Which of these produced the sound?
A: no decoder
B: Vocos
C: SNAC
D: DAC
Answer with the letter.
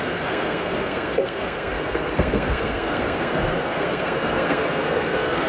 C